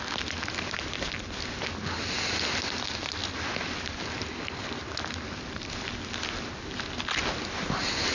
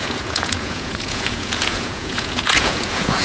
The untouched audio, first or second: first